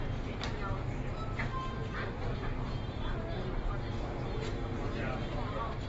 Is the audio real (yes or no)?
yes